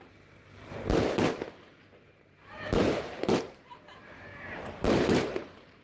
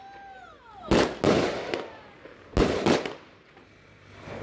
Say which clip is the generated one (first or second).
first